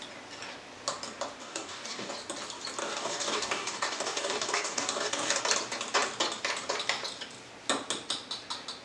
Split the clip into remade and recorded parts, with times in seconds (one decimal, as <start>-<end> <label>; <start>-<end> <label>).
0.0-1.4 recorded; 1.4-2.1 remade; 2.1-2.8 recorded; 2.8-5.4 remade; 5.4-8.8 recorded